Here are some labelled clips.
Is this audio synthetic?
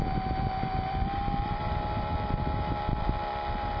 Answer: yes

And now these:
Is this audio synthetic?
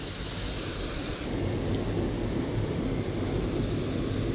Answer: no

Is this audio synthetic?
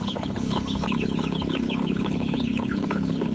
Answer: yes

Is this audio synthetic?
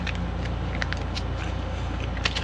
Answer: no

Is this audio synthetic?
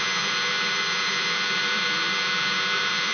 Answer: yes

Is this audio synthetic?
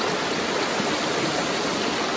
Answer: no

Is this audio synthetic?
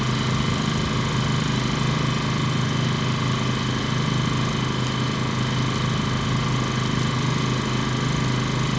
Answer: no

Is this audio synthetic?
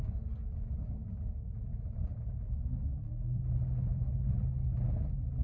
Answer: no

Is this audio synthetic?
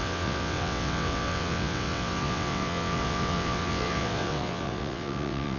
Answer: yes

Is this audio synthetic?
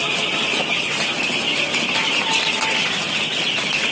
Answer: no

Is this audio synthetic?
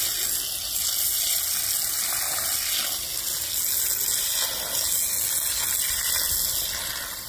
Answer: no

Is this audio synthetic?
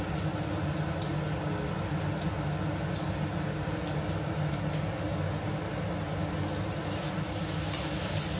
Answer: no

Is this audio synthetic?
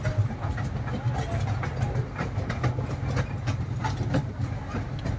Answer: no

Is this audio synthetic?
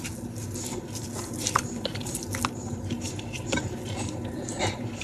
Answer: no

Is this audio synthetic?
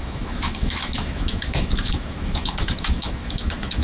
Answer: yes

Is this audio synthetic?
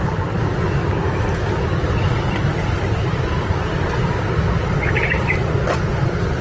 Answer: no